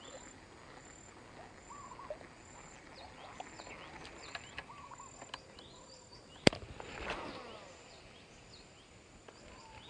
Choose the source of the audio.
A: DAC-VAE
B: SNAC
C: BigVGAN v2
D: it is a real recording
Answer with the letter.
D